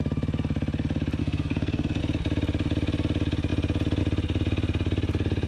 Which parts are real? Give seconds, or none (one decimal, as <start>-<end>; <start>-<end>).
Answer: 0.0-1.2; 2.0-5.5